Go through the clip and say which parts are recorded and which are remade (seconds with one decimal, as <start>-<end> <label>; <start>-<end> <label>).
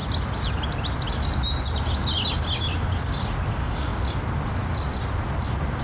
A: 0.0-3.5 recorded; 3.5-3.9 remade; 3.9-5.8 recorded